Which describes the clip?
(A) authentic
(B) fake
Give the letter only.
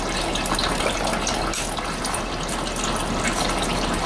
A